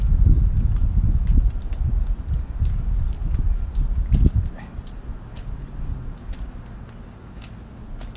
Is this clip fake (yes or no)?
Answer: no